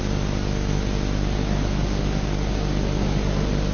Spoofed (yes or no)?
no